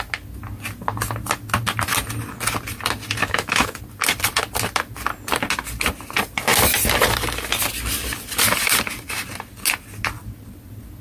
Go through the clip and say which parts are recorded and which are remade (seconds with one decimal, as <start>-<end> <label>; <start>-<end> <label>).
0.0-3.2 recorded; 3.2-3.8 remade; 3.8-11.0 recorded